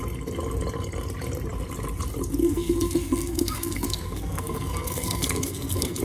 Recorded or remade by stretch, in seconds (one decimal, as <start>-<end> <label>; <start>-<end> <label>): 0.0-2.4 recorded; 2.4-6.0 remade